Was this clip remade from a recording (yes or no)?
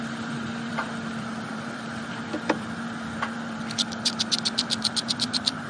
yes